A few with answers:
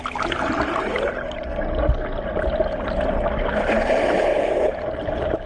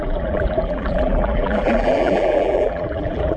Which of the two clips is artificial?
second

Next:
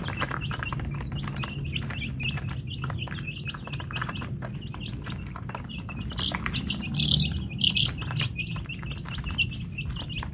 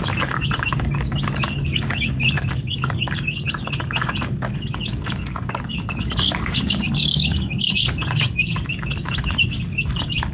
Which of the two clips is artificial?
second